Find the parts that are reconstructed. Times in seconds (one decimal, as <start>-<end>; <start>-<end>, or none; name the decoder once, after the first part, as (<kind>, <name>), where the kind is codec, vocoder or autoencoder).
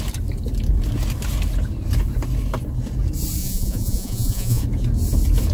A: 3.4-4.6 (vocoder, Vocos)